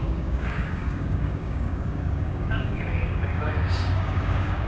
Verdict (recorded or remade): remade